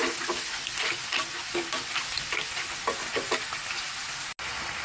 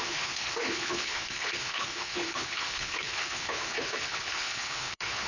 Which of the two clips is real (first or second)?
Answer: first